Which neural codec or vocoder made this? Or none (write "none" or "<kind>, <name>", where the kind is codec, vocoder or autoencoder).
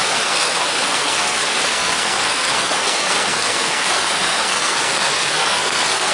codec, SNAC